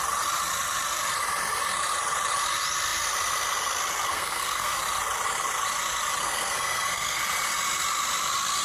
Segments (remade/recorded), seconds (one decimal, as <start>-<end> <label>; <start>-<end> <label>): 0.0-4.1 recorded; 4.1-4.7 remade; 4.7-6.2 recorded; 6.2-7.2 remade; 7.2-8.6 recorded